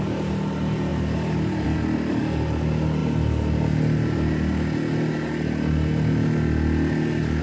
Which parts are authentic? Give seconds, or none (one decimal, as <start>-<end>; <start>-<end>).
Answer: 0.0-0.9; 2.2-7.4